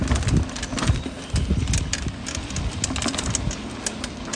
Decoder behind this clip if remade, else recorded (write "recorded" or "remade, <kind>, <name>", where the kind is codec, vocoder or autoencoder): recorded